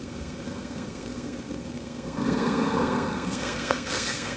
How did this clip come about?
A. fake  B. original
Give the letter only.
A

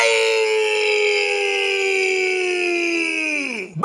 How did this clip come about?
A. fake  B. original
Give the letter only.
B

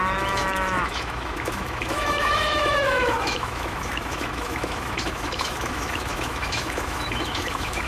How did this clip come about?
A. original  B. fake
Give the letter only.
B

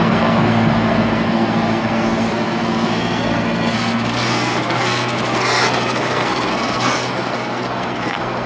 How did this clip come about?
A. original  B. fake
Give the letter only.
B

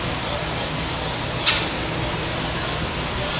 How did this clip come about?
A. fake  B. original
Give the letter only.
B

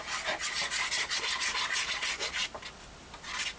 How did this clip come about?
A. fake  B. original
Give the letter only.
B